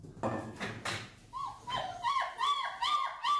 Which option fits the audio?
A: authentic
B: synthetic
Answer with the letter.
A